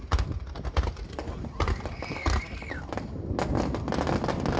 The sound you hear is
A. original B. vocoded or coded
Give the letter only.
A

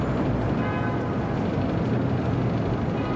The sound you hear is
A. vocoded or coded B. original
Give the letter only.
B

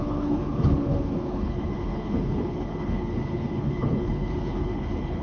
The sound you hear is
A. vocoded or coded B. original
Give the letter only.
A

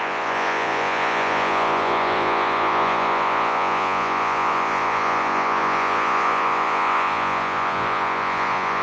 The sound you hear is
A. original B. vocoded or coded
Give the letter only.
B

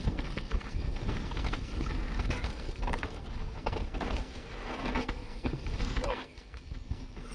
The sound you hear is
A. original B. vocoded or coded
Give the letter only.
B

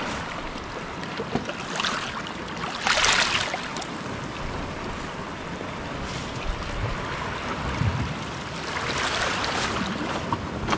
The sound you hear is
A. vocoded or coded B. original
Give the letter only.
B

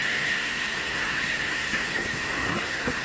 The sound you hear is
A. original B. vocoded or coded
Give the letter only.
B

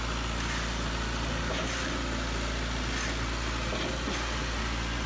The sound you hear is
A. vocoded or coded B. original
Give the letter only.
B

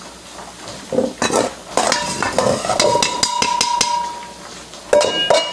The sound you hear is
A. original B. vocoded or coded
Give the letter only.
A